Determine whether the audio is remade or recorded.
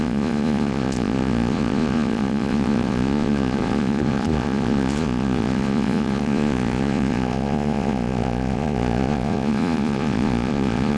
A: remade